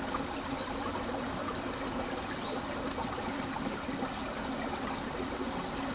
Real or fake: real